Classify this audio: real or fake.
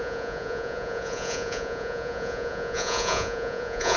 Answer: fake